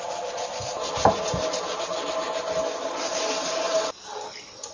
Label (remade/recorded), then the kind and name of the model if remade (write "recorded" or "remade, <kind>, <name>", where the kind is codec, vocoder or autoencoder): recorded